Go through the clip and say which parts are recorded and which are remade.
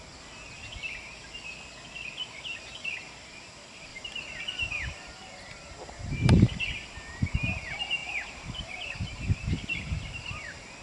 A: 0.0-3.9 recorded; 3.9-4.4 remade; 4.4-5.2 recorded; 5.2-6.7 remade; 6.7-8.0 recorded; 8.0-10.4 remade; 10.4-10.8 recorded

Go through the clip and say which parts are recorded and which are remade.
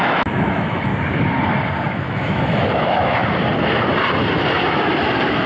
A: 0.0-0.9 remade; 0.9-1.9 recorded; 1.9-3.2 remade; 3.2-5.5 recorded